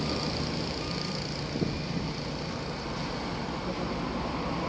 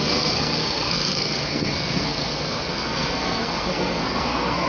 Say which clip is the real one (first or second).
first